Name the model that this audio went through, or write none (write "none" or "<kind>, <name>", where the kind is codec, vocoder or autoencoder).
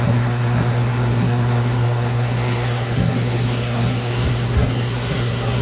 codec, SNAC